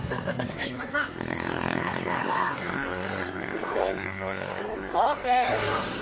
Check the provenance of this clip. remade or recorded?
remade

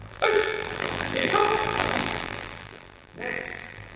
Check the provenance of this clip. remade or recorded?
remade